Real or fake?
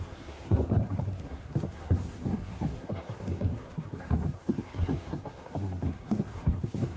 fake